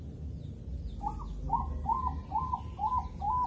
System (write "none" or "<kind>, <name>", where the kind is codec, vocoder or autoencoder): none